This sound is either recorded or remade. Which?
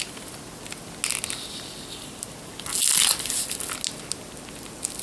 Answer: recorded